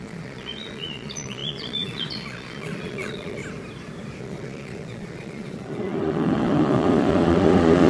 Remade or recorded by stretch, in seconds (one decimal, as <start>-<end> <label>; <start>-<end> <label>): 0.0-3.4 remade; 3.4-4.2 recorded; 4.2-7.9 remade